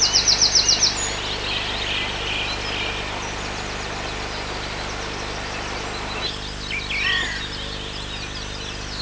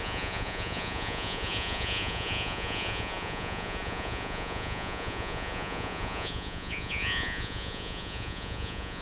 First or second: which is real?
first